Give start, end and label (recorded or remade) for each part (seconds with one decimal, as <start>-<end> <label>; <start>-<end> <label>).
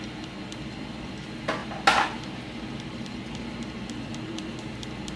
0.0-5.2 recorded